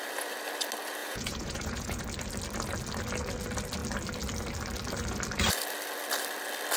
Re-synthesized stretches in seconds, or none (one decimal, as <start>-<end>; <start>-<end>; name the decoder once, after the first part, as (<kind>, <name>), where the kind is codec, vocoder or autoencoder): 1.0-2.0 (vocoder, Vocos)

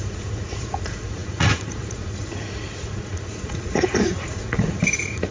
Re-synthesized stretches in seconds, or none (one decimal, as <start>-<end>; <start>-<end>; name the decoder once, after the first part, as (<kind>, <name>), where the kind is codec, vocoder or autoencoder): 0.0-5.3 (vocoder, Vocos)

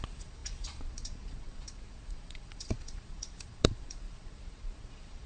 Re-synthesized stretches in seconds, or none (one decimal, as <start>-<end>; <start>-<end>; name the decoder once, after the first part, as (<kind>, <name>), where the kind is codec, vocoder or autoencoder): 0.0-5.3 (vocoder, Vocos)

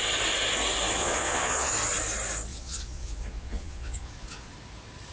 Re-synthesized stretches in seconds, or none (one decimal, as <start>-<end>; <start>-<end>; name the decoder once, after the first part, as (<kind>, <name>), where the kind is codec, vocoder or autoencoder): 1.0-1.7 (vocoder, Vocos); 2.5-4.5